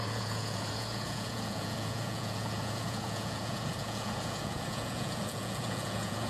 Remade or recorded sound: remade